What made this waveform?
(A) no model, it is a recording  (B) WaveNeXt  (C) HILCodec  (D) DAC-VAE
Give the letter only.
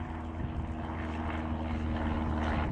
A